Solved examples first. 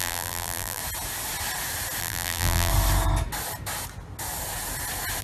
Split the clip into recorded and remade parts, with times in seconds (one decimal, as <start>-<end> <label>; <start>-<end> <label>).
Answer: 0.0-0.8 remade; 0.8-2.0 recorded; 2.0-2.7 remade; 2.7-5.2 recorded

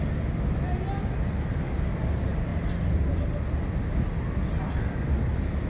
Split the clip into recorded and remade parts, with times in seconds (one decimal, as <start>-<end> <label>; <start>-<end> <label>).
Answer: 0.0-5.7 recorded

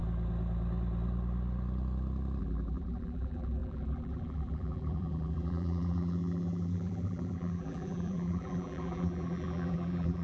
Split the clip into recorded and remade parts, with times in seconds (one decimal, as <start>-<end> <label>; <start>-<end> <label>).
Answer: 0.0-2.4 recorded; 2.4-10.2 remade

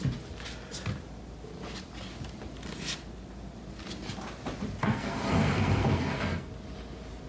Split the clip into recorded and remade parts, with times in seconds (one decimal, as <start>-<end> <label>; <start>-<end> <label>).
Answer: 0.0-4.8 recorded; 4.8-6.5 remade; 6.5-7.3 recorded

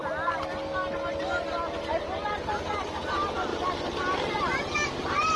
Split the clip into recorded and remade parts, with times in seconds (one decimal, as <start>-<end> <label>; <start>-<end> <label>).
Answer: 0.0-2.3 recorded; 2.3-3.5 remade; 3.5-4.3 recorded; 4.3-5.4 remade

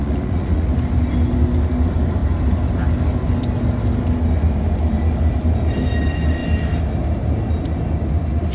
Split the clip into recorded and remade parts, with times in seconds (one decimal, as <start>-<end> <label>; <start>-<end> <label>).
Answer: 0.0-0.7 remade; 0.7-8.5 recorded

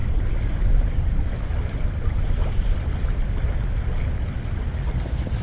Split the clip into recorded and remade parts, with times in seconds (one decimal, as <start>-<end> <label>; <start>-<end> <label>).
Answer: 0.0-0.7 recorded; 0.7-1.5 remade; 1.5-4.7 recorded; 4.7-5.4 remade